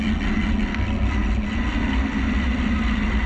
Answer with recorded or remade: recorded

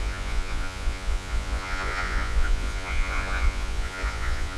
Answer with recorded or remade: remade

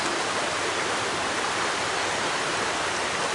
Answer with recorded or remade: recorded